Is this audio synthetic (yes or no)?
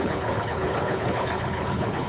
yes